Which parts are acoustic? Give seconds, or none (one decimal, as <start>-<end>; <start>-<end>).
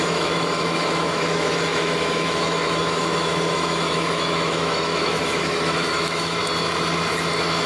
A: 6.4-7.7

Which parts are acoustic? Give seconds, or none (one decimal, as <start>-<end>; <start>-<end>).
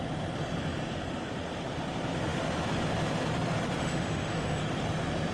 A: 0.0-3.8; 4.6-5.3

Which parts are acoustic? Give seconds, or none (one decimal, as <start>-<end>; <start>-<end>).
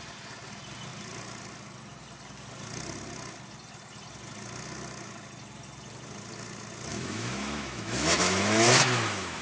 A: 0.0-6.9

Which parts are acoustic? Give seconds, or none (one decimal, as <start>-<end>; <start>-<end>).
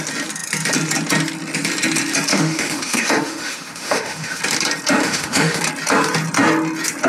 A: 0.0-2.3; 4.4-5.0; 5.6-7.1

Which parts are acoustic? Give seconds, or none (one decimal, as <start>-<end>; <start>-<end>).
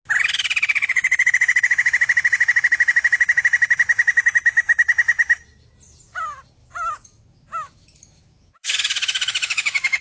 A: 0.0-6.6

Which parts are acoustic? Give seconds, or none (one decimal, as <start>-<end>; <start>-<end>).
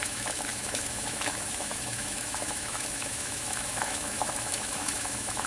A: none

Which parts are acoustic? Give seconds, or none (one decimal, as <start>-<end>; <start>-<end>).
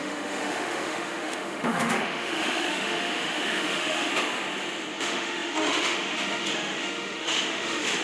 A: 4.1-5.0